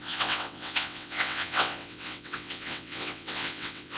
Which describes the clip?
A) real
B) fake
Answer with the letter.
B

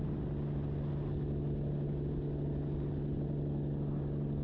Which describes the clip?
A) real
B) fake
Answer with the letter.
A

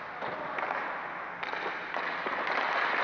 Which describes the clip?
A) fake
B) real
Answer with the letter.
B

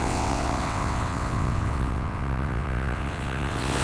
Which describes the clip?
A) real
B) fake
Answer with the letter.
B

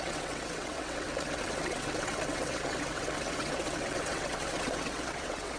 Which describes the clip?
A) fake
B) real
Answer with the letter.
A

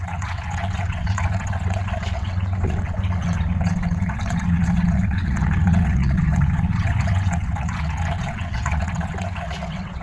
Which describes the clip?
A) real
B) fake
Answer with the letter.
B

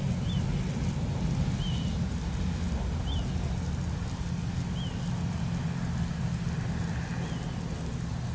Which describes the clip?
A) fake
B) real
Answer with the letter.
B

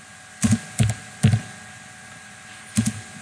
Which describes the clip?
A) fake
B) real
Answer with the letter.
B